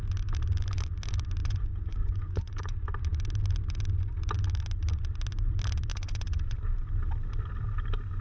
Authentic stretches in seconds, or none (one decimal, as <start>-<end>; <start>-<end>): 0.0-1.4; 2.8-5.9; 6.6-8.2